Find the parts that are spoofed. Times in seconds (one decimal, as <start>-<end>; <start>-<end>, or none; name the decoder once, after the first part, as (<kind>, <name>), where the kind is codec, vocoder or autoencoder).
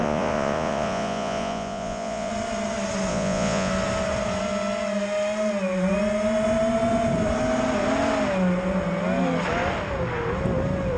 0.0-2.3 (vocoder, Vocos); 3.1-3.7